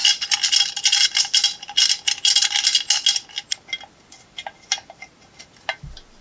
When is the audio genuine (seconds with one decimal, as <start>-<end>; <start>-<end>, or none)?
0.0-6.2